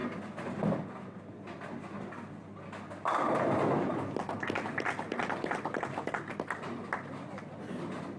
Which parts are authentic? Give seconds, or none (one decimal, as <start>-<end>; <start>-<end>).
0.0-8.2